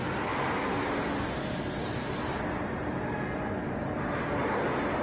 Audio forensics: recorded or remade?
recorded